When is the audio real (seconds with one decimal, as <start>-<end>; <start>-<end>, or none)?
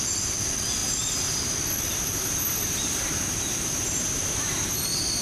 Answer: 0.0-0.8; 1.4-2.1